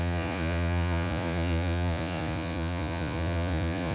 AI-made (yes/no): yes